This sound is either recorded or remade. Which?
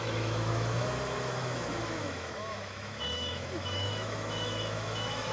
remade